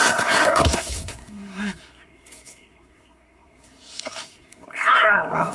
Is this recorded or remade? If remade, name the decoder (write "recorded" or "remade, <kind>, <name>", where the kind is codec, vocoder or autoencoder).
remade, codec, SNAC